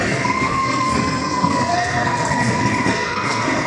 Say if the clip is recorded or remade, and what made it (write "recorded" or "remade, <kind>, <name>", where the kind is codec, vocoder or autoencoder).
remade, codec, SNAC